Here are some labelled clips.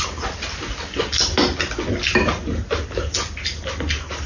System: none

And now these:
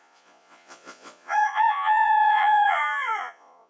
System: vocoder, Vocos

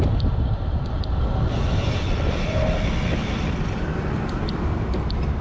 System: none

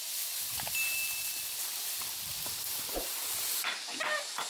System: none